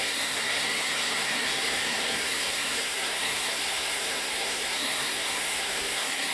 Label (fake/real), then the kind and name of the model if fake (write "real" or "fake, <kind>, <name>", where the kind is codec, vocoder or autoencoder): fake, codec, SNAC